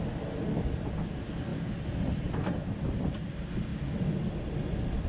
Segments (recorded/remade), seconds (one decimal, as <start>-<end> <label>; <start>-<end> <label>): 0.0-1.5 recorded; 1.5-3.3 remade; 3.3-3.7 recorded; 3.7-5.1 remade